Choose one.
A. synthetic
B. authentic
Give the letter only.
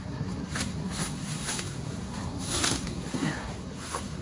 A